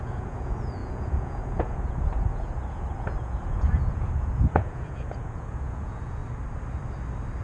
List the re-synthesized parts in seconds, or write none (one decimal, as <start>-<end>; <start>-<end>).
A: 0.0-6.2